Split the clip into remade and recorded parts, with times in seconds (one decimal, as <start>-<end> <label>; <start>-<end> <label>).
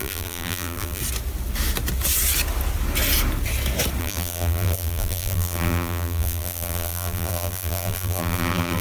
0.0-1.0 remade; 1.0-4.0 recorded; 4.0-8.8 remade